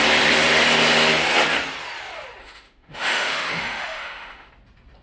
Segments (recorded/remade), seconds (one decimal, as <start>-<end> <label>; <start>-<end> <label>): 0.0-2.4 recorded; 2.4-4.5 remade; 4.5-5.0 recorded